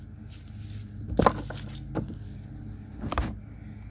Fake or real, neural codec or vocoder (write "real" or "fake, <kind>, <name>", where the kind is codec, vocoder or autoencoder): real